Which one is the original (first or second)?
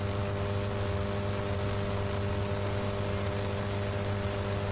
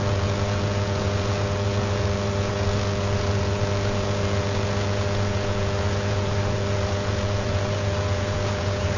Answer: first